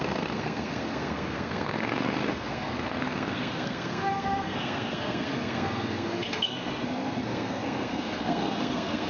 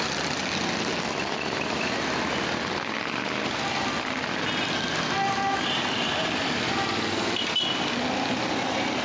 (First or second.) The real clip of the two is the second